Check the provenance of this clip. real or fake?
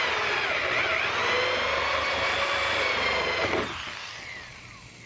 real